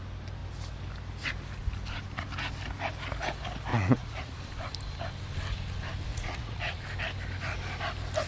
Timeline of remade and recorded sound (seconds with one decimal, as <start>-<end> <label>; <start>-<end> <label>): 0.0-3.7 recorded; 3.7-4.4 remade; 4.4-6.1 recorded; 6.1-6.8 remade; 6.8-8.3 recorded